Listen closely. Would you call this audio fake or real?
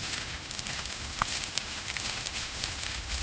fake